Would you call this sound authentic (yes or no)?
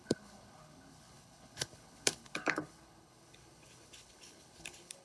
no